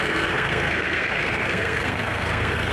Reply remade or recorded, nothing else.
remade